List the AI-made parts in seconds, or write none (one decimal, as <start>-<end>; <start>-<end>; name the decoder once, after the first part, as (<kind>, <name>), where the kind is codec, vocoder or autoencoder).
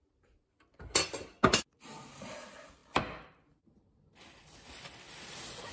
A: none